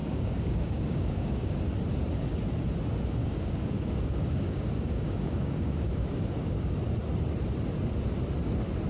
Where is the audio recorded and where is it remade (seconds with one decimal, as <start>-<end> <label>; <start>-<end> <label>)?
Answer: 0.0-1.5 remade; 1.5-3.2 recorded; 3.2-6.7 remade; 6.7-8.9 recorded